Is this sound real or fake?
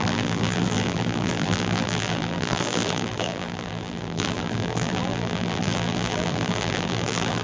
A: fake